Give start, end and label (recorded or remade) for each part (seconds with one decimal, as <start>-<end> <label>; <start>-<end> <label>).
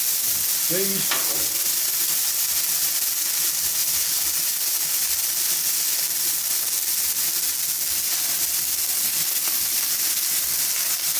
0.0-11.2 recorded